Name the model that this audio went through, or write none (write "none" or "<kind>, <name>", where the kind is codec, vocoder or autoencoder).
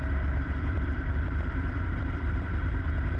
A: vocoder, BigVGAN v2